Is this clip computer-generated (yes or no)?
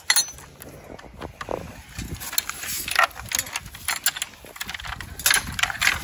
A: no